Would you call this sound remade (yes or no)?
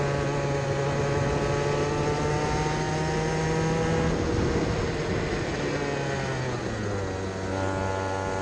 no